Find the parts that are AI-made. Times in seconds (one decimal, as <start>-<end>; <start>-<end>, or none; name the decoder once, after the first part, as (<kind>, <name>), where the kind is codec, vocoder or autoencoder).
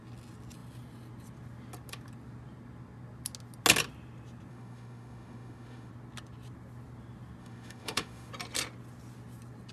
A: 4.5-5.9 (autoencoder, DAC-VAE); 7.4-8.3